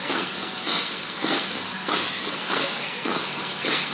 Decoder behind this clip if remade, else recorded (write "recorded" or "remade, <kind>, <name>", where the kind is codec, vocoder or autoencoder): remade, codec, SNAC